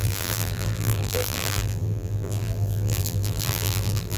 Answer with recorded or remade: remade